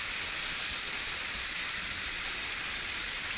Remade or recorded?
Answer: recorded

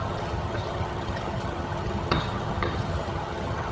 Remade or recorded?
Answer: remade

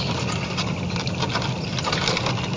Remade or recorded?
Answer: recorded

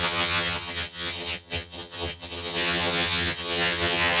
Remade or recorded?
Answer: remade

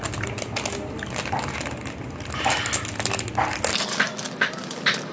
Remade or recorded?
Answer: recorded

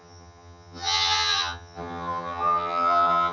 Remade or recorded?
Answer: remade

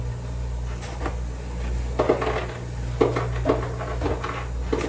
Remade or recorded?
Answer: recorded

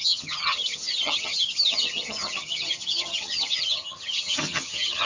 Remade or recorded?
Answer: remade